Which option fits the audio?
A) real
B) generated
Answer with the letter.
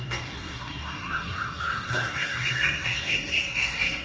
B